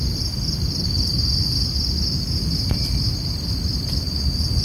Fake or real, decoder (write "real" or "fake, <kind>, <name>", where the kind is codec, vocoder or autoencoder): real